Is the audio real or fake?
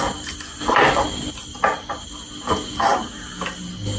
real